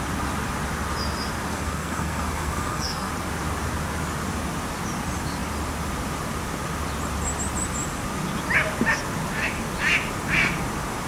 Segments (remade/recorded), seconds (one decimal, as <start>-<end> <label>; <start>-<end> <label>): 0.0-1.5 recorded; 1.5-3.1 remade; 3.1-11.1 recorded

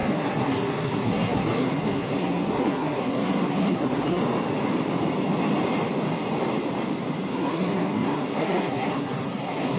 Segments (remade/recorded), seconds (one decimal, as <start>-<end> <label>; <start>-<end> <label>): 0.0-4.2 remade; 4.2-7.3 recorded; 7.3-9.8 remade

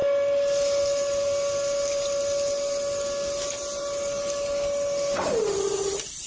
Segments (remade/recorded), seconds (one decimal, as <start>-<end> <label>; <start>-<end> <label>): 0.0-6.3 recorded

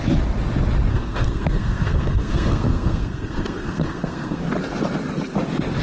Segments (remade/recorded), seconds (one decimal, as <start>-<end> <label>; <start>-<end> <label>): 0.0-0.9 recorded; 0.9-4.4 remade; 4.4-5.8 recorded

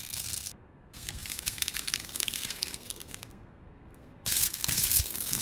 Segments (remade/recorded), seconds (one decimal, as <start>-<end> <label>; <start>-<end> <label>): 0.0-5.4 remade

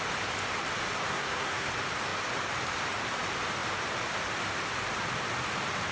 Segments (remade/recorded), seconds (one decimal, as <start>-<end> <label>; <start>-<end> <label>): 0.0-1.1 recorded; 1.1-1.7 remade; 1.7-5.9 recorded